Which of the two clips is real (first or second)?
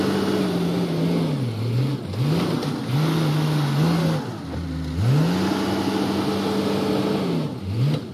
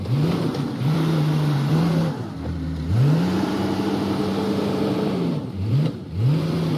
first